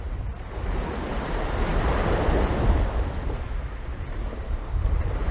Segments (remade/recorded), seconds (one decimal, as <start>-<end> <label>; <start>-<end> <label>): 0.0-5.3 recorded